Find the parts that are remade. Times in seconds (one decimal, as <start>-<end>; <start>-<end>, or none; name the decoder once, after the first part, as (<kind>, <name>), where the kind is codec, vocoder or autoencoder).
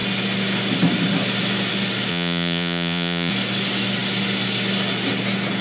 2.1-3.3 (vocoder, Vocos)